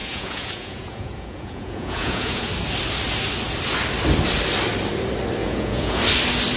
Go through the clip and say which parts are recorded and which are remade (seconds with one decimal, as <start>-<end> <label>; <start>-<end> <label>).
0.0-2.5 remade; 2.5-5.4 recorded; 5.4-6.0 remade; 6.0-6.6 recorded